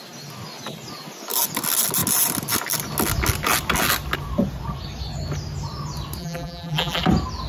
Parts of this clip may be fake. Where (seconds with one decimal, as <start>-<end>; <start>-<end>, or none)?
6.2-7.0